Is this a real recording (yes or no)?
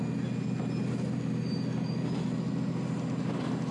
yes